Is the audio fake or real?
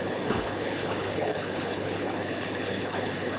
fake